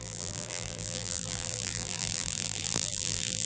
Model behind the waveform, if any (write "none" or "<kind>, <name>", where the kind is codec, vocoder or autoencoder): vocoder, BigVGAN v2